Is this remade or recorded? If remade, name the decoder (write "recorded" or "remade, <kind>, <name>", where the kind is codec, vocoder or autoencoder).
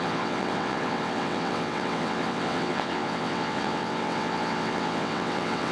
remade, vocoder, WaveNeXt